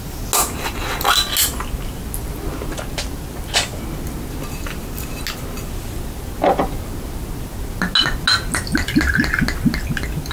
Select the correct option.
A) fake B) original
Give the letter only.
B